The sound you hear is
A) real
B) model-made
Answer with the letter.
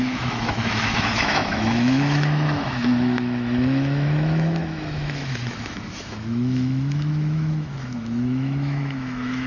B